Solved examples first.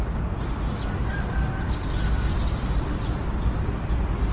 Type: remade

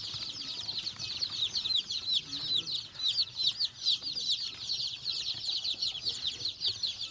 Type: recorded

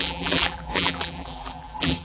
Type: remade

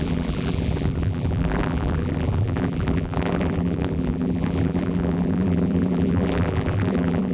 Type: remade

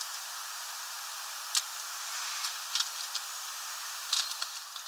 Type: recorded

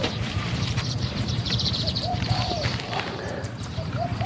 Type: remade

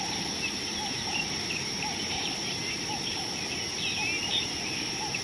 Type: remade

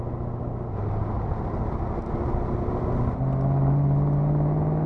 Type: recorded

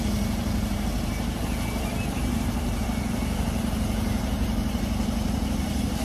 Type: remade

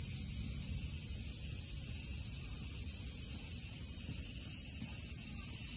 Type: recorded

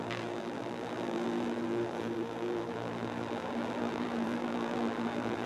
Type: remade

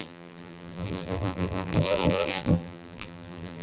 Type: remade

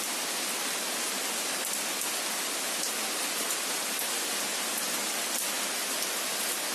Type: recorded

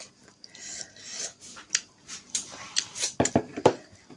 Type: recorded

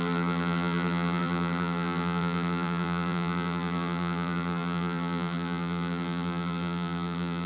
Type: remade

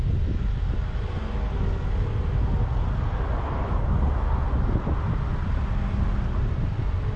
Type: recorded